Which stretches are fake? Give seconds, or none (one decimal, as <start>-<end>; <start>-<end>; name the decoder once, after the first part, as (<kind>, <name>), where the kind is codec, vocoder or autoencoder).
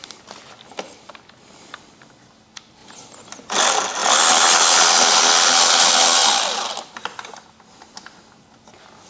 none